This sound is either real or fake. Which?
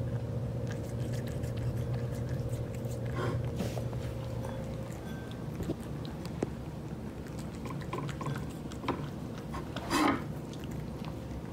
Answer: real